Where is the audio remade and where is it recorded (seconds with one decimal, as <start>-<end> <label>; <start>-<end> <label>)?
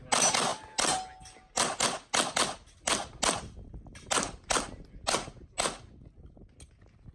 0.0-7.1 recorded